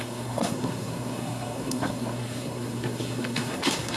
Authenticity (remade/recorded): remade